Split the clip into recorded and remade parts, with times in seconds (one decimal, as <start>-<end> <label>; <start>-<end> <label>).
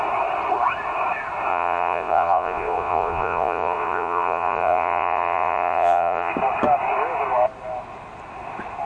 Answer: 0.0-1.5 recorded; 1.5-6.3 remade; 6.3-8.9 recorded